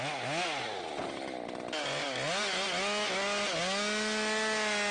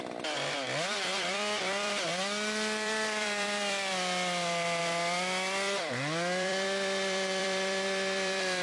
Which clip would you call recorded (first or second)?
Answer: first